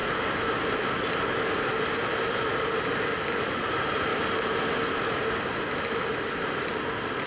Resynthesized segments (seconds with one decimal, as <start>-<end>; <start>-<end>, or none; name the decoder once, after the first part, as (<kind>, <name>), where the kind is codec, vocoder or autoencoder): none